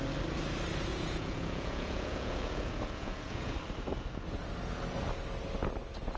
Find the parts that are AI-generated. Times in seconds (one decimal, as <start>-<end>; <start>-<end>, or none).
0.9-3.5